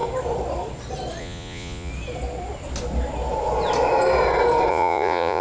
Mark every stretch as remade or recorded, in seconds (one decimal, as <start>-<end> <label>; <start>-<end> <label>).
0.0-1.2 recorded; 1.2-1.9 remade; 1.9-4.7 recorded; 4.7-5.4 remade